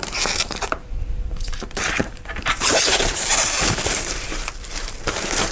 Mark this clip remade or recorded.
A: remade